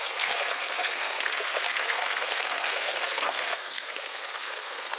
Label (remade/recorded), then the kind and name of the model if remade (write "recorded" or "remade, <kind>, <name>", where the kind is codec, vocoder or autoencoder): remade, codec, SNAC